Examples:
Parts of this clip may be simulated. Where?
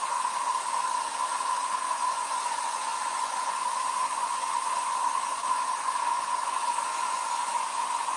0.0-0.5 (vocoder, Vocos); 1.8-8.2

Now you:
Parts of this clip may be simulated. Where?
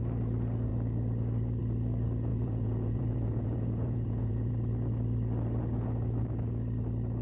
2.3-4.5 (vocoder, Vocos)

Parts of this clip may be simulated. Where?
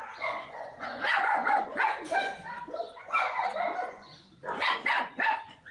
0.0-5.7 (vocoder, Vocos)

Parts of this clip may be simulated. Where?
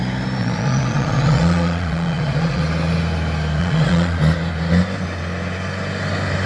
0.4-2.6 (vocoder, Vocos); 3.6-4.2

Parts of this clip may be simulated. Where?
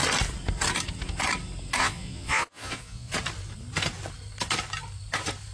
1.8-3.1 (vocoder, Vocos)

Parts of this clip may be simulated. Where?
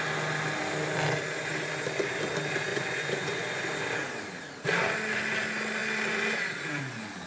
2.7-3.6 (vocoder, Vocos)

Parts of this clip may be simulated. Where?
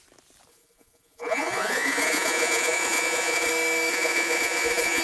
0.5-3.5 (vocoder, Vocos); 3.9-5.0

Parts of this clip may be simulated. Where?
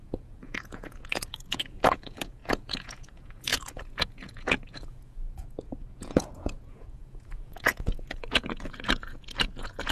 0.0-9.9 (vocoder, Vocos)